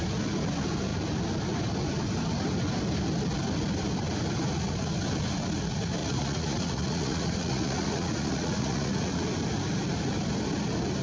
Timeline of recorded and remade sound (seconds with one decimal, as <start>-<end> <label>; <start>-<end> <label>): 0.0-6.0 recorded; 6.0-9.2 remade; 9.2-11.0 recorded